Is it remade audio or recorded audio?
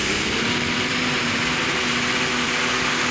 recorded